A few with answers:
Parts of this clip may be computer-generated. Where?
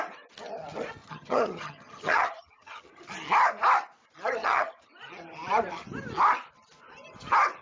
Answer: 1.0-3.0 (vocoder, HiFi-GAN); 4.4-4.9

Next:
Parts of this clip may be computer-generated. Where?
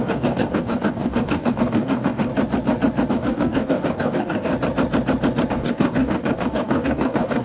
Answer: 0.0-2.3 (codec, DAC); 3.1-4.5; 5.5-7.4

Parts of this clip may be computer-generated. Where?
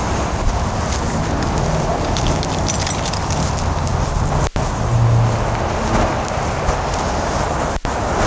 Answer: none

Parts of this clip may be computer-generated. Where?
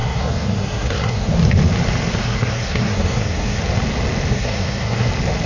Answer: 0.0-1.3 (codec, SNAC); 2.2-3.6; 4.3-5.1